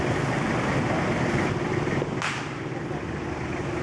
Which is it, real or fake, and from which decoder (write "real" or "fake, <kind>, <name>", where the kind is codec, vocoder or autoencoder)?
real